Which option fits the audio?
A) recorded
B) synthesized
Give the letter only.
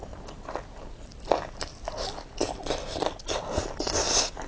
A